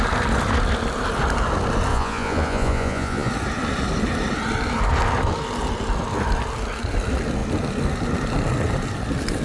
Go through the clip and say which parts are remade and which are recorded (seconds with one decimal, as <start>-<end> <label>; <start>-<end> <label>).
0.0-1.9 recorded; 1.9-3.3 remade; 3.3-9.4 recorded

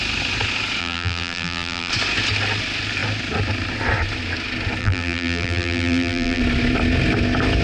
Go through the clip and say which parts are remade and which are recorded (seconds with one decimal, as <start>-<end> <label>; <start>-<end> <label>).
0.0-0.8 recorded; 0.8-1.9 remade; 1.9-4.8 recorded; 4.8-6.4 remade; 6.4-7.6 recorded

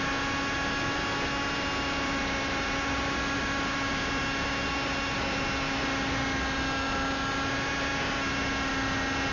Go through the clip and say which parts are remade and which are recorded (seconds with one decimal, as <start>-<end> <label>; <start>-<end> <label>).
0.0-9.3 recorded